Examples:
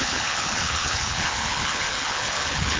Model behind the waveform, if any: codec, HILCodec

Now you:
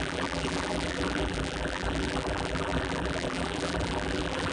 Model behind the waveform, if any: vocoder, BigVGAN v2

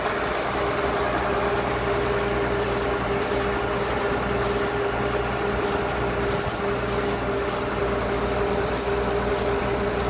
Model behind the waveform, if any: none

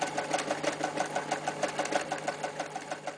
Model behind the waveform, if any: none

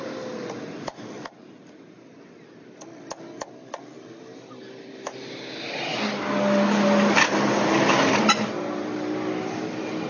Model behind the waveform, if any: none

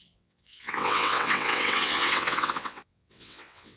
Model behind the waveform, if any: vocoder, WaveNeXt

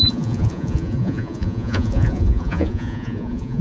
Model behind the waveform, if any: vocoder, Vocos